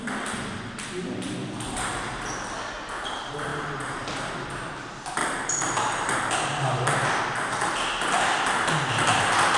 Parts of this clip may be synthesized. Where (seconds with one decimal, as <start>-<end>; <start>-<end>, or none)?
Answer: 3.5-4.7; 5.2-7.2

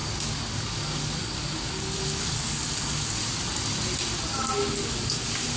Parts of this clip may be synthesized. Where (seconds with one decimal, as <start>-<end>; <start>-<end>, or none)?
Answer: 0.0-3.2; 4.8-5.6

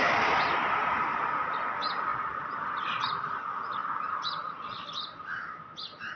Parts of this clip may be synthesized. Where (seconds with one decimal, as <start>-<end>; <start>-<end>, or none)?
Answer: 2.1-2.9; 3.8-6.2

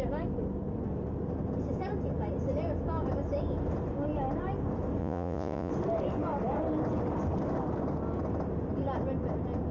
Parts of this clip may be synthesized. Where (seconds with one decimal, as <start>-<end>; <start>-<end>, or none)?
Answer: 5.0-5.7

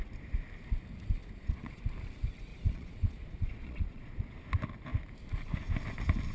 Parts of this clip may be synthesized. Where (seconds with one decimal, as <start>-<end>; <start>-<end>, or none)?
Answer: 1.2-1.8; 2.5-4.4

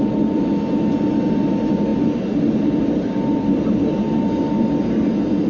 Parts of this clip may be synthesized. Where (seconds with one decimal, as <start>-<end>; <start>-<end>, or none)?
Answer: none

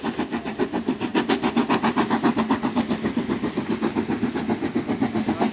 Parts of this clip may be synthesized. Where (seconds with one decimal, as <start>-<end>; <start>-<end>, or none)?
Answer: none